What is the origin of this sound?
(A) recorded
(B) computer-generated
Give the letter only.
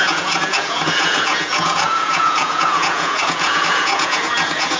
B